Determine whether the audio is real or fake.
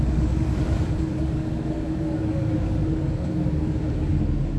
fake